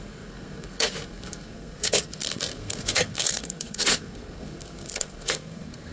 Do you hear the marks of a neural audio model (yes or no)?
yes